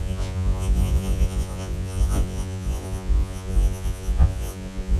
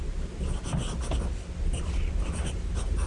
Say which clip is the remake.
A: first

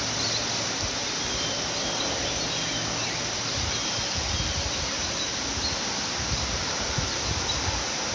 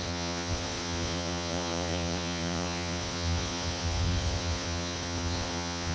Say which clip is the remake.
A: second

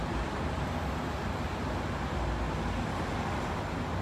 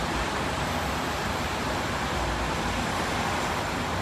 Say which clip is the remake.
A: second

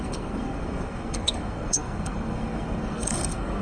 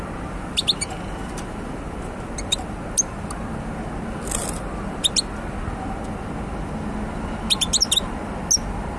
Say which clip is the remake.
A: first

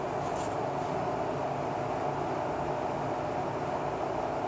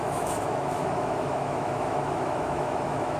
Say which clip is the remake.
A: second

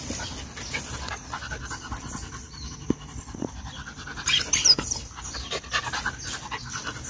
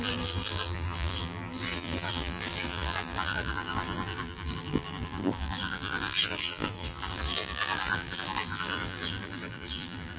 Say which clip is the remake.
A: second